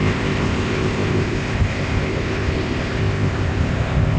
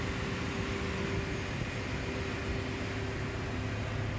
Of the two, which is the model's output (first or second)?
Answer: first